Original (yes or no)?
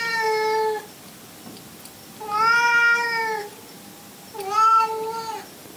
yes